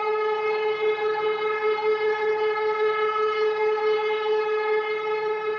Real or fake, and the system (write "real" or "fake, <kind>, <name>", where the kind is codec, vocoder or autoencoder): fake, vocoder, HiFi-GAN